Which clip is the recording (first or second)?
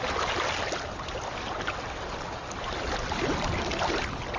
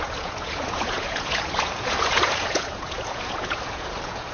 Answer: first